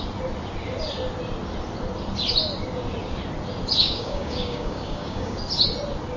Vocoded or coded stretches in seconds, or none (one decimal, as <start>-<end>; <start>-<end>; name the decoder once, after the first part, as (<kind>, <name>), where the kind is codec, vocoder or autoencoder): 3.8-5.4 (codec, DAC)